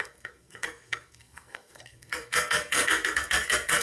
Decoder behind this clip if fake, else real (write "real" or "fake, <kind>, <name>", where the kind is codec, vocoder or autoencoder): fake, codec, SNAC